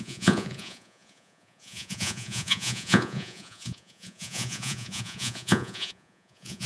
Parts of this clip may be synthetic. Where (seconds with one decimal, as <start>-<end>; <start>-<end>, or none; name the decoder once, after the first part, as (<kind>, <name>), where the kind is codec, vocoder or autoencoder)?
0.0-6.7 (vocoder, Vocos)